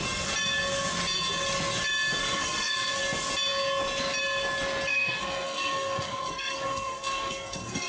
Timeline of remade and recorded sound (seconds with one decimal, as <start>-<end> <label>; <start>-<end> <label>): 0.0-2.2 recorded; 2.2-3.0 remade; 3.0-4.9 recorded; 4.9-7.9 remade